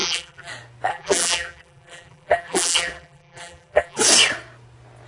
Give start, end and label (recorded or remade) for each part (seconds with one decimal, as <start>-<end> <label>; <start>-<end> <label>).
0.0-0.5 remade; 0.5-0.9 recorded; 0.9-4.0 remade; 4.0-5.1 recorded